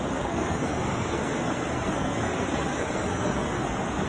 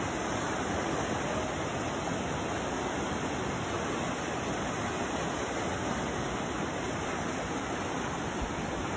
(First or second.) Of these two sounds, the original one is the second